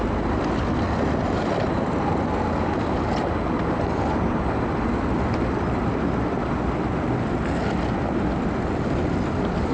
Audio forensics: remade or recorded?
recorded